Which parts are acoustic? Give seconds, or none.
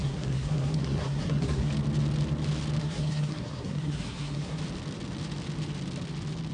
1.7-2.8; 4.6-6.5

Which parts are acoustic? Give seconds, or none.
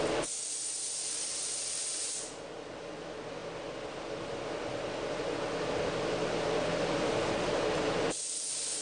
0.0-8.8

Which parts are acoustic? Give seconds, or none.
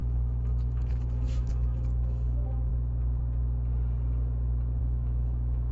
2.7-4.8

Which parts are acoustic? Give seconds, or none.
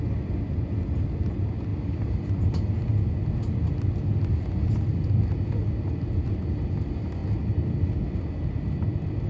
0.0-9.3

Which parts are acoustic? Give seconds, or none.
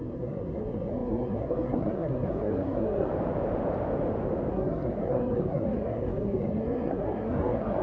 3.1-4.5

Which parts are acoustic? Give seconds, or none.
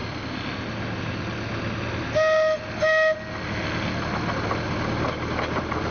0.0-5.9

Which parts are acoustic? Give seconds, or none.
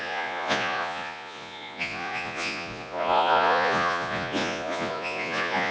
none